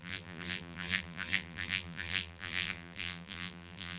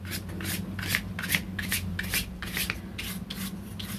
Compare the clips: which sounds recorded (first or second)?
second